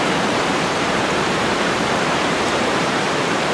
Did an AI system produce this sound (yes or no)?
yes